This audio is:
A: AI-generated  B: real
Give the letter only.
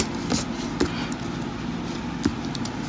B